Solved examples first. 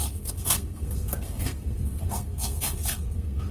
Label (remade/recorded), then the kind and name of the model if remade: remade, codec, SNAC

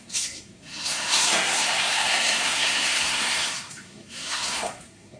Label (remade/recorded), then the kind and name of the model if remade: remade, codec, SNAC